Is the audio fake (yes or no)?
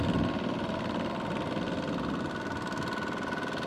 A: no